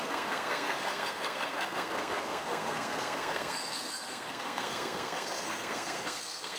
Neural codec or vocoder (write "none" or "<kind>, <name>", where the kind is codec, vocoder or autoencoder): codec, SNAC